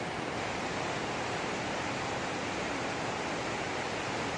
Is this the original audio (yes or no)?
no